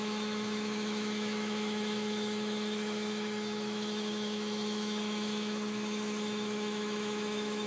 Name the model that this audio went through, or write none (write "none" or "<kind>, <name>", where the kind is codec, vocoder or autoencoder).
autoencoder, DAC-VAE